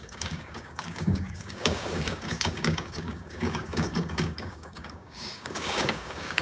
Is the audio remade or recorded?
remade